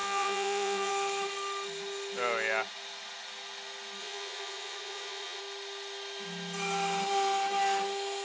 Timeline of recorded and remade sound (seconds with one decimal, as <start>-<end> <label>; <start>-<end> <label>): 0.0-0.9 remade; 0.9-4.0 recorded; 4.0-5.4 remade; 5.4-8.2 recorded